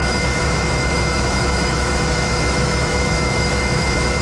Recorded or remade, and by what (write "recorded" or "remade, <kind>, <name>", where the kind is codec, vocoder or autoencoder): remade, autoencoder, DAC-VAE